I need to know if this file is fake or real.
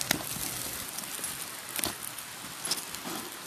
real